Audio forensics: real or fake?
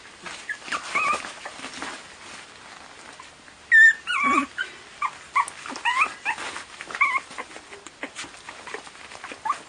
real